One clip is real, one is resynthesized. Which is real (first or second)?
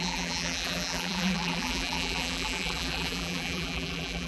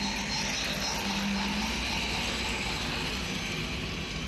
second